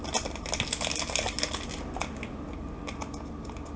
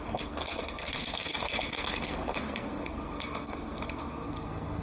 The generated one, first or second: second